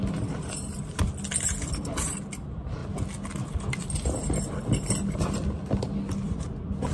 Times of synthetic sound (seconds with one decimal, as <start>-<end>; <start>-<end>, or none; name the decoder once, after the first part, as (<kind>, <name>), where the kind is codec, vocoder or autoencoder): none